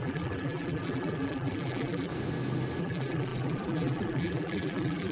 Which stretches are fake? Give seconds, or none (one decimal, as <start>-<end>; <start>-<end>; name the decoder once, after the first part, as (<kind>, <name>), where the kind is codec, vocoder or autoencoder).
0.0-2.1 (vocoder, BigVGAN v2); 2.8-5.1

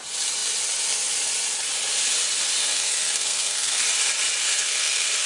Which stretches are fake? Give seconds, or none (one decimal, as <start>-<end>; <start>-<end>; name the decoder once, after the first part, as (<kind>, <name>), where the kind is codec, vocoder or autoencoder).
2.6-3.8 (codec, SNAC); 4.4-5.3

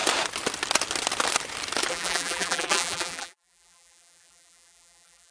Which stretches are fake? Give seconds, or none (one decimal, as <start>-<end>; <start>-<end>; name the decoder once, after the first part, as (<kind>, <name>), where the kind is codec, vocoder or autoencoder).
1.9-5.3 (vocoder, BigVGAN v2)

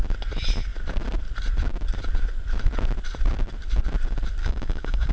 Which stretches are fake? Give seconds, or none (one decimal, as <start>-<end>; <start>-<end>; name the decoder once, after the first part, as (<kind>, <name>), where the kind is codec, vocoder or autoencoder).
4.4-5.1 (codec, DAC)

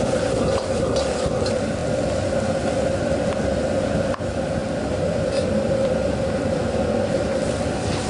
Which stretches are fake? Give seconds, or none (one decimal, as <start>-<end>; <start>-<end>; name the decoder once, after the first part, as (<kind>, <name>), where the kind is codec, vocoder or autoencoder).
none

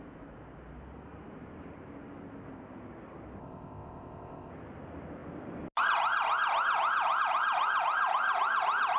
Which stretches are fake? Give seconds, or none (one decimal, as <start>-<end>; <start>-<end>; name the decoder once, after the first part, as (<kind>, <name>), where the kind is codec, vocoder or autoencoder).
3.4-4.5 (codec, ZipCodec)

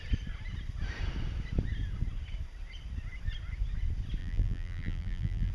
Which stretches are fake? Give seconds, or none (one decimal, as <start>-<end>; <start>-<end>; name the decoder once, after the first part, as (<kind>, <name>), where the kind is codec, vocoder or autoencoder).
4.2-5.5 (vocoder, BigVGAN v2)